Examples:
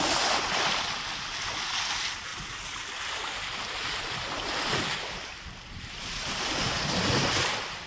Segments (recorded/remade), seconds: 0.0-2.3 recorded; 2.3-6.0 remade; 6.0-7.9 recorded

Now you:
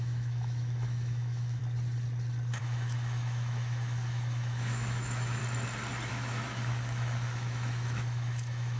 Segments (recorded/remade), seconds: 0.0-1.6 remade; 1.6-2.6 recorded; 2.6-5.4 remade; 5.4-6.1 recorded; 6.1-8.8 remade

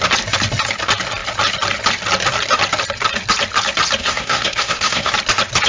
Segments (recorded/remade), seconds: 0.0-4.0 recorded; 4.0-5.1 remade; 5.1-5.7 recorded

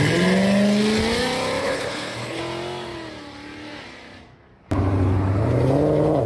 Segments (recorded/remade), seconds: 0.0-1.6 recorded; 1.6-2.4 remade; 2.4-6.3 recorded

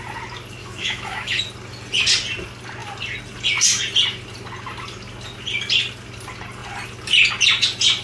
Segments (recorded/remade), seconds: 0.0-0.6 recorded; 0.6-1.4 remade; 1.4-8.0 recorded

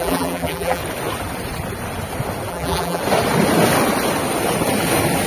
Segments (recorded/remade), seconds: 0.0-0.8 remade; 0.8-2.5 recorded; 2.5-3.0 remade; 3.0-5.3 recorded

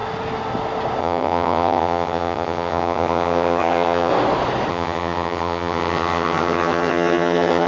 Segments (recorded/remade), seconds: 0.0-1.0 recorded; 1.0-4.1 remade; 4.1-4.7 recorded; 4.7-7.7 remade